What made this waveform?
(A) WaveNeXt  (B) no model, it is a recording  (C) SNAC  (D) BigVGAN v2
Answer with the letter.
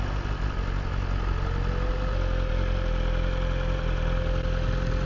B